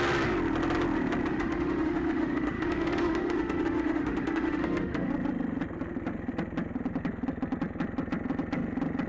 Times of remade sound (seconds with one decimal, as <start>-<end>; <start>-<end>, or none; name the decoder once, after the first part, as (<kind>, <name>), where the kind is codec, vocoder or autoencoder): 1.3-5.1 (autoencoder, DAC-VAE)

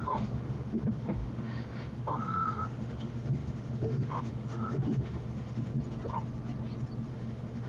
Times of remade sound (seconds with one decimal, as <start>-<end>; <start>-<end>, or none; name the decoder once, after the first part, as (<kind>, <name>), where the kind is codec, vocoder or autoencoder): 0.0-5.7 (autoencoder, DAC-VAE); 7.1-7.7

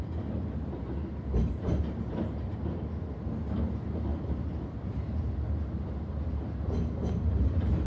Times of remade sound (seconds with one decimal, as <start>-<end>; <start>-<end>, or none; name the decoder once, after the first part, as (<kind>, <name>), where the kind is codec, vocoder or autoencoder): none